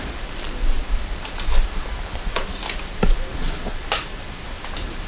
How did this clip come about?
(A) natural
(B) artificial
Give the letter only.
A